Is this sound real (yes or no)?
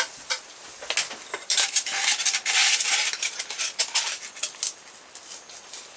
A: yes